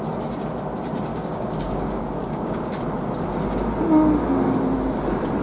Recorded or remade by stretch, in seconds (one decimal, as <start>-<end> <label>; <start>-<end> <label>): 0.0-1.1 recorded; 1.1-2.6 remade; 2.6-5.4 recorded